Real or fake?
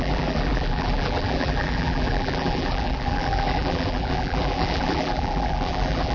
fake